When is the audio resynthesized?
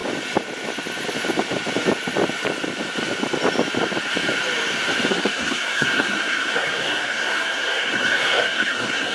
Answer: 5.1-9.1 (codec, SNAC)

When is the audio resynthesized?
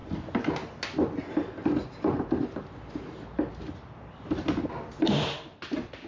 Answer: none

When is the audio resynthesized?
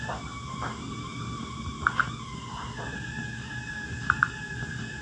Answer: none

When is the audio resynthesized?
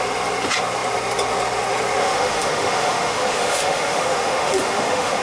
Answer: 2.0-5.2 (autoencoder, DAC-VAE)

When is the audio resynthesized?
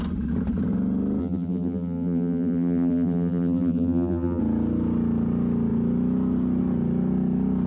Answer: 1.2-4.4 (vocoder, BigVGAN v2)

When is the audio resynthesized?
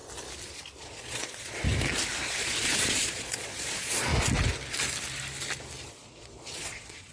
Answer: 0.8-1.6 (vocoder, Vocos); 2.4-4.1; 5.9-7.1